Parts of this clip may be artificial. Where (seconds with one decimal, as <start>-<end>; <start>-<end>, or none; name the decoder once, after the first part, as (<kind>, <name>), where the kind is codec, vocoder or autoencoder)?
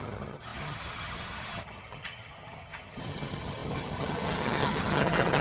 0.0-5.4 (vocoder, HiFi-GAN)